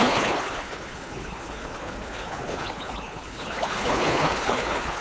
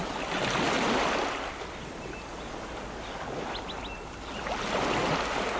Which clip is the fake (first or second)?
first